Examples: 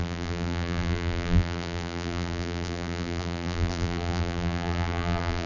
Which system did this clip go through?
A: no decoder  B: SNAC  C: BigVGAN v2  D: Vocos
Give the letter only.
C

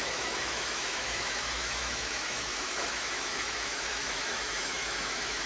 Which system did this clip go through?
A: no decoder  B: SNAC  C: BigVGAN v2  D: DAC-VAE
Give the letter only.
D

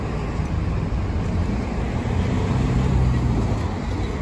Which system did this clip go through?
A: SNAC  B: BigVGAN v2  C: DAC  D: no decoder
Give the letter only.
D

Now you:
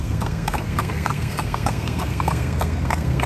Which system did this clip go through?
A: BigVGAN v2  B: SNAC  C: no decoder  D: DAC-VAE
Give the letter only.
B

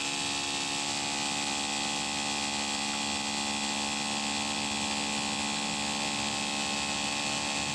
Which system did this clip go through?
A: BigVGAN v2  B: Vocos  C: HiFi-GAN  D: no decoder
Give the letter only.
D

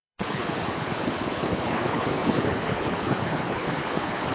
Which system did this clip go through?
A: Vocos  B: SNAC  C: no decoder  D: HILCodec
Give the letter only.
D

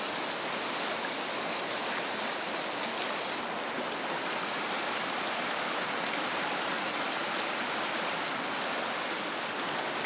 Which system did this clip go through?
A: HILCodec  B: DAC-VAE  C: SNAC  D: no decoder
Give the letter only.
D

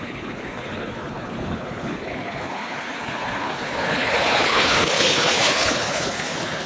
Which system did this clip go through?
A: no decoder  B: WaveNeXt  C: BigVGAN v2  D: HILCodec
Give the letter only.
D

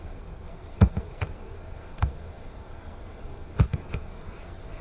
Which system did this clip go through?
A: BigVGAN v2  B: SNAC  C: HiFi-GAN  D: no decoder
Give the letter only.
B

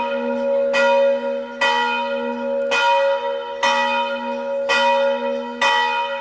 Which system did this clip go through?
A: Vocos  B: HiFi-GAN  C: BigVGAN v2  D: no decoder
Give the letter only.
D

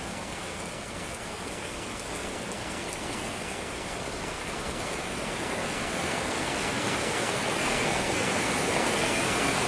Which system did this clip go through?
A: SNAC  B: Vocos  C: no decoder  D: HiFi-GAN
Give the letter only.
A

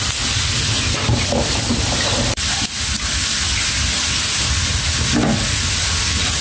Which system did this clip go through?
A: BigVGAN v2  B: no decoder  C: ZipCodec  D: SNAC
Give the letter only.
B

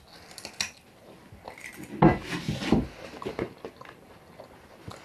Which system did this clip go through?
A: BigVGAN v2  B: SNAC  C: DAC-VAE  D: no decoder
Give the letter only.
D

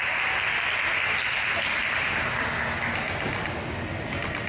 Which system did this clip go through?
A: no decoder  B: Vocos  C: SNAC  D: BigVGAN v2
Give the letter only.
A